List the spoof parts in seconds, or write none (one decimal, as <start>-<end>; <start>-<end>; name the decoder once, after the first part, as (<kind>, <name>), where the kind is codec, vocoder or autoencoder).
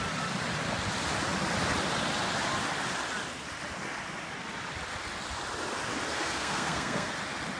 6.1-7.1 (codec, SNAC)